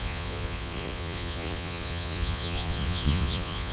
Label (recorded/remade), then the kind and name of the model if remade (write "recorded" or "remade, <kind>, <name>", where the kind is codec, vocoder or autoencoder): remade, vocoder, Vocos